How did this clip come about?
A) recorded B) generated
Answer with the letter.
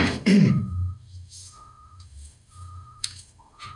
B